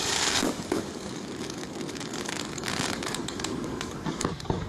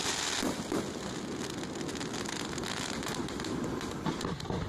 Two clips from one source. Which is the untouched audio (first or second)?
second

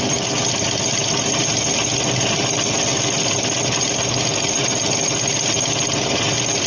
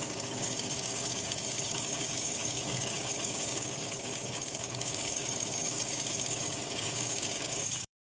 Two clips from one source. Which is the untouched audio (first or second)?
first